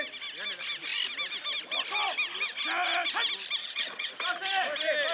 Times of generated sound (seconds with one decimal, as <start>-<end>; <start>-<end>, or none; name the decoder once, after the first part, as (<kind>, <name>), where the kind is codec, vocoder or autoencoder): 3.6-4.1 (vocoder, HiFi-GAN)